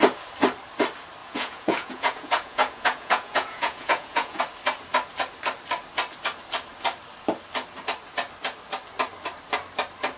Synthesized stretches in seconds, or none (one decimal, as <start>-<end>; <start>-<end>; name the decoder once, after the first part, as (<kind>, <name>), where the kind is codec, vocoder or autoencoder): 1.2-4.4 (vocoder, Vocos)